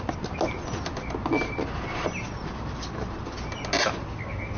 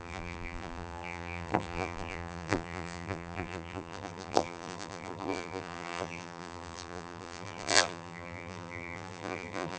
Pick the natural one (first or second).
first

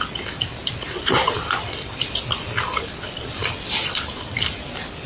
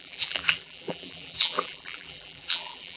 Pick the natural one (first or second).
first